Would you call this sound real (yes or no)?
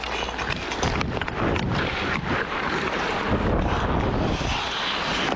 yes